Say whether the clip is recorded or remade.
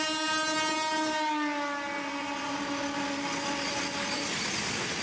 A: recorded